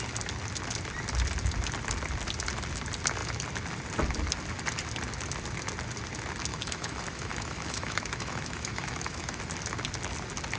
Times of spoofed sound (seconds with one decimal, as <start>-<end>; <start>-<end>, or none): 6.5-9.4